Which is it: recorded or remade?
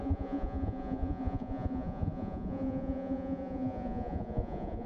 remade